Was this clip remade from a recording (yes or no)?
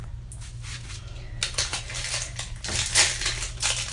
no